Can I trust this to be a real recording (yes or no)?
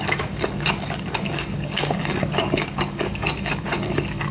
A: no